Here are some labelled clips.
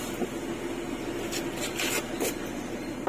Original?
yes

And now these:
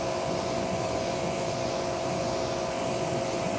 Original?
no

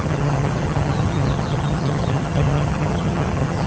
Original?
no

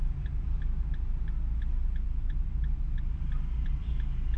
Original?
yes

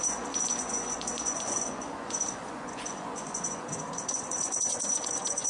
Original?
no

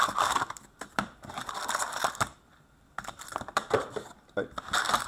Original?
no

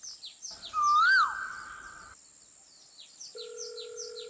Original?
yes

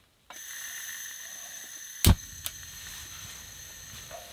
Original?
yes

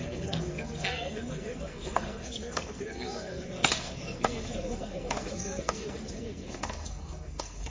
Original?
no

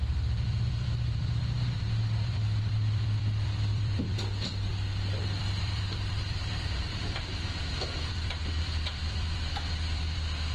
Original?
no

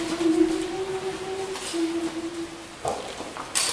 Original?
yes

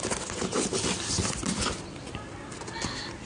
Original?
yes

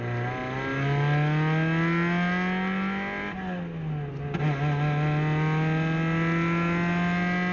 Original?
yes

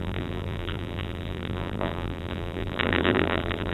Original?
no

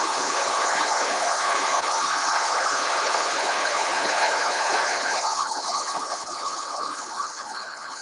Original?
no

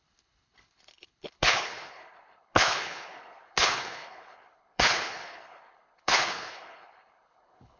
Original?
no